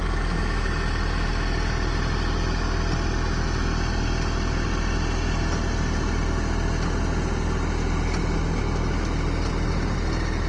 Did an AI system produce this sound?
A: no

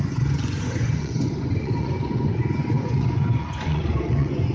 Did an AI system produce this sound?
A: yes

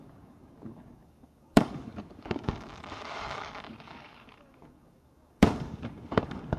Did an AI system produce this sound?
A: yes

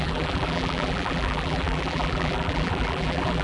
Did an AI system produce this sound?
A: yes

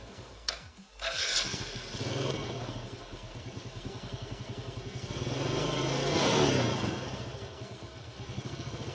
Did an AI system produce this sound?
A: yes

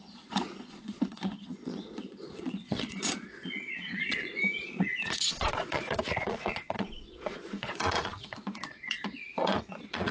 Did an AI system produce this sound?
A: yes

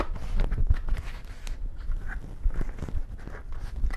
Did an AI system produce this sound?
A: no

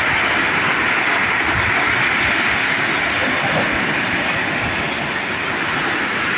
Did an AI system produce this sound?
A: no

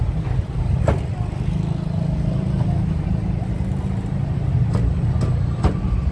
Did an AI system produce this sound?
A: no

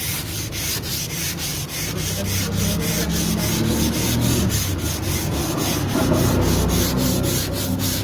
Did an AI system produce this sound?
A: no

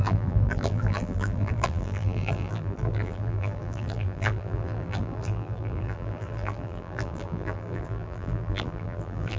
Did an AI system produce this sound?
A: yes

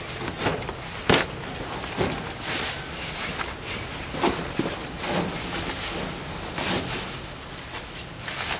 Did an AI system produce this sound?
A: no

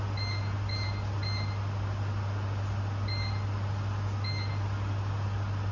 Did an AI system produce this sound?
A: no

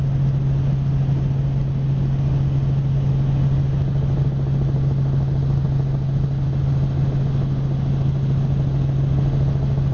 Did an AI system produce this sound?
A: no